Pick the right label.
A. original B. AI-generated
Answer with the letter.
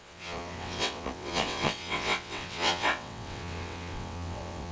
B